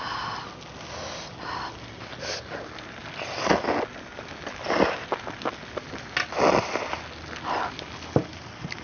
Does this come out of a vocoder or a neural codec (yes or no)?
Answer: no